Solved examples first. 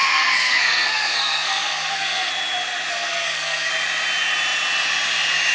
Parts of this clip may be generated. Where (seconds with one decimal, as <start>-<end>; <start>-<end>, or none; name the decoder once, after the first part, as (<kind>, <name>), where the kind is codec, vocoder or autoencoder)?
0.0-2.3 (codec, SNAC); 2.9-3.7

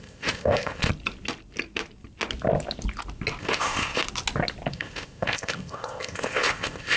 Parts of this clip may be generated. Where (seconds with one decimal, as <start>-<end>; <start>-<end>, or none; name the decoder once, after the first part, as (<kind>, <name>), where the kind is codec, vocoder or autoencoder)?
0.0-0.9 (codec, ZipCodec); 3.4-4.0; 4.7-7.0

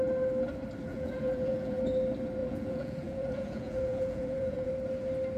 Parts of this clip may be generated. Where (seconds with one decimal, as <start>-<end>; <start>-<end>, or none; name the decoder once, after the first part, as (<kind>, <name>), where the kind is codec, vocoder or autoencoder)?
0.9-1.8 (vocoder, Vocos); 2.4-4.7

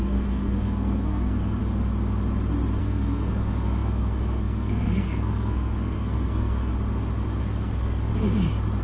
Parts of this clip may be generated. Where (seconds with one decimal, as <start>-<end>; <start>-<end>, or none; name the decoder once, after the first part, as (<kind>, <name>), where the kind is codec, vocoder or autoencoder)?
0.0-1.6 (codec, SNAC); 2.8-6.7; 7.4-8.1

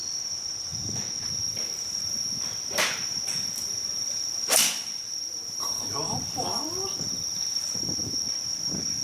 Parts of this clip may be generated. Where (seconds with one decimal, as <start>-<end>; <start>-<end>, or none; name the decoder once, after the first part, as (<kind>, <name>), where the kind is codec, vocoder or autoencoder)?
0.0-0.7 (vocoder, BigVGAN v2); 1.4-9.0